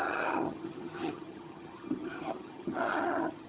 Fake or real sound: fake